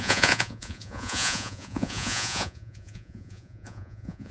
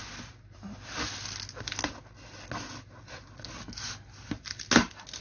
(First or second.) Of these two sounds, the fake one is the first